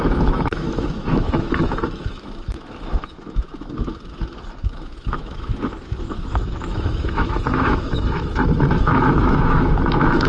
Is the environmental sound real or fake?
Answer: fake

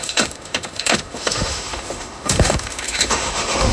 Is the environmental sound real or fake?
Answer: fake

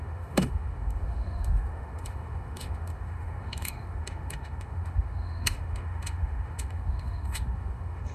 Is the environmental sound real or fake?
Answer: fake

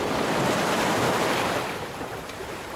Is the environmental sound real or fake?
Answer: real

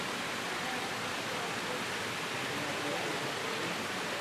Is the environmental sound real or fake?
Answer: real